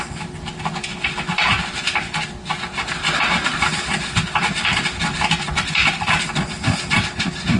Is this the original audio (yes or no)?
yes